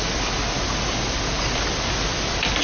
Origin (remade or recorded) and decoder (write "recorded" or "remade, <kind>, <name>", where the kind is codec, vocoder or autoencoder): recorded